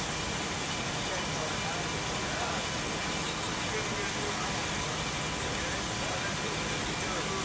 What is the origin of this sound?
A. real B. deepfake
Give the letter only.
A